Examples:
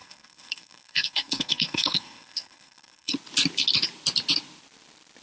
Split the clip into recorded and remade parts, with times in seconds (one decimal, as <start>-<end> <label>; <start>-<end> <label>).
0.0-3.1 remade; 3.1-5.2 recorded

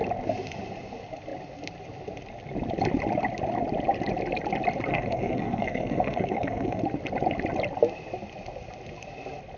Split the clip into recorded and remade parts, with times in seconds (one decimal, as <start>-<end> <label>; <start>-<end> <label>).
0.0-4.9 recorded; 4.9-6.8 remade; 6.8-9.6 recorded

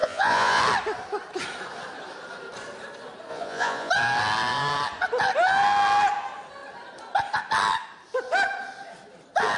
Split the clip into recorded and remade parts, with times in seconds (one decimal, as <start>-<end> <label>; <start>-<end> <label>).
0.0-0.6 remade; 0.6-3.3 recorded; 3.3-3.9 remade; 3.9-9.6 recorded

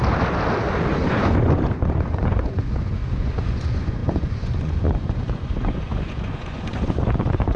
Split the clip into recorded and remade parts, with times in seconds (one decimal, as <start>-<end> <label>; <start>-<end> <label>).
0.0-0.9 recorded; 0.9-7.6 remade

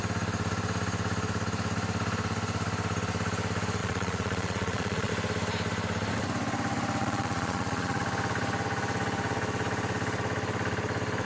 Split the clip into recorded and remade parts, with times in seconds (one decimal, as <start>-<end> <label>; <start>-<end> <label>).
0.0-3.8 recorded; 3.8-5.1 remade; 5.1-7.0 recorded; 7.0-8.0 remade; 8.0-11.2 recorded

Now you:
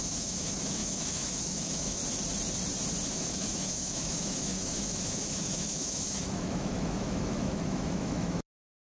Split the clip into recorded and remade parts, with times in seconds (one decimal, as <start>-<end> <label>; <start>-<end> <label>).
0.0-2.0 remade; 2.0-3.1 recorded; 3.1-8.8 remade

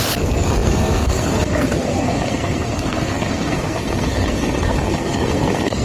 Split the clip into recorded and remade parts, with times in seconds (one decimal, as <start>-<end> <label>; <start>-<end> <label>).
0.0-5.8 remade